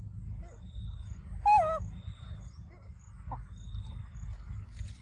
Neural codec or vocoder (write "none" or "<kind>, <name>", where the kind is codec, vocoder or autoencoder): none